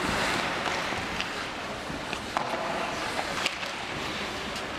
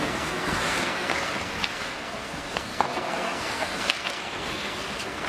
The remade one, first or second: second